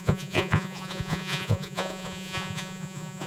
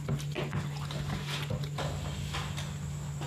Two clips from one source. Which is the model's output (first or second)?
first